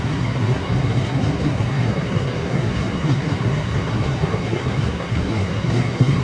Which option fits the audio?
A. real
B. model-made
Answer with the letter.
B